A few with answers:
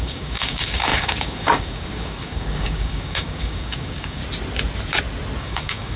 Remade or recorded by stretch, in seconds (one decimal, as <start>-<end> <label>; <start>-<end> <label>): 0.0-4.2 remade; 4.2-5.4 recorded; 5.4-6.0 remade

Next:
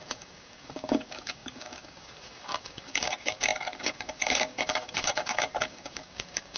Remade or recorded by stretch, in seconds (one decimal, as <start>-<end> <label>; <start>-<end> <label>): 0.0-6.6 remade

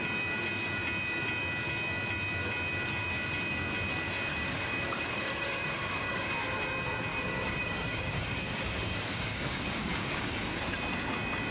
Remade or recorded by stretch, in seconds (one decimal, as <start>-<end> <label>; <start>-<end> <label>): 0.0-4.3 recorded; 4.3-6.3 remade; 6.3-7.1 recorded; 7.1-10.6 remade; 10.6-11.5 recorded